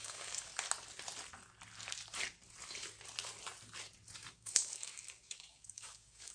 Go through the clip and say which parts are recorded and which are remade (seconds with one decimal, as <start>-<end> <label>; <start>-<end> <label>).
0.0-0.5 remade; 0.5-4.3 recorded; 4.3-6.3 remade